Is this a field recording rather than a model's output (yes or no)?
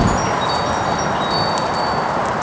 yes